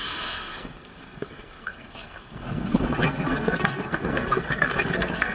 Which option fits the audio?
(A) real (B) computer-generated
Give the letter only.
B